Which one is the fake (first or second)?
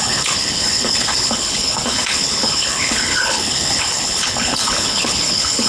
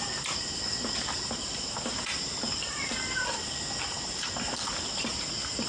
first